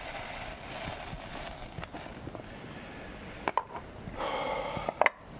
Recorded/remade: recorded